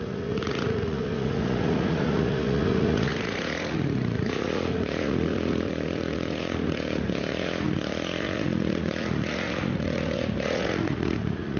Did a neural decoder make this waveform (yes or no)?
yes